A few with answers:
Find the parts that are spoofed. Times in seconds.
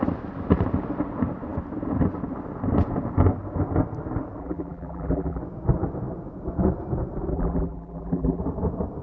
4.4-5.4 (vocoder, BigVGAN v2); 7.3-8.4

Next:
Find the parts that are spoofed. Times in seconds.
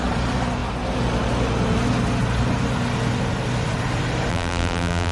4.3-5.1 (vocoder, BigVGAN v2)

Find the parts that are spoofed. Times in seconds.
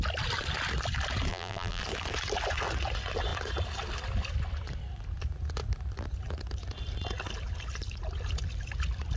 1.3-1.8 (vocoder, BigVGAN v2)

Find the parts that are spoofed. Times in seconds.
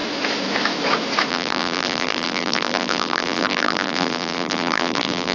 1.3-5.3 (vocoder, BigVGAN v2)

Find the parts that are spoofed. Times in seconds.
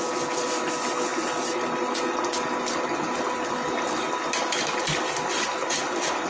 none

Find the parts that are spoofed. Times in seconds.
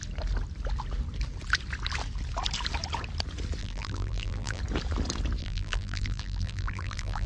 3.6-4.6 (vocoder, BigVGAN v2); 5.4-7.3